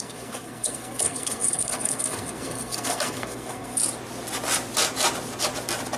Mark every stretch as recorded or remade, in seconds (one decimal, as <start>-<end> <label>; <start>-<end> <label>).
0.0-3.8 remade; 3.8-6.0 recorded